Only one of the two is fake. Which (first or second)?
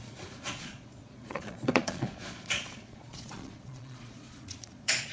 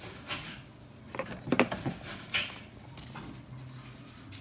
first